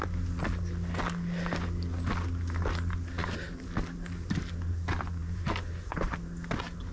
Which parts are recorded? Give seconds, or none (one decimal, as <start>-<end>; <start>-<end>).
0.0-5.2; 6.1-6.9